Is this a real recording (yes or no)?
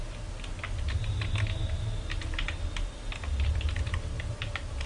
yes